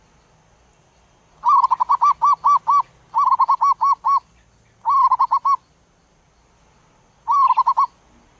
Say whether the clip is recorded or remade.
recorded